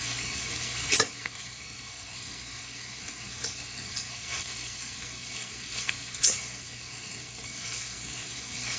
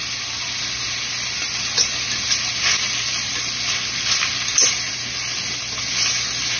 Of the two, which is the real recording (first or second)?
second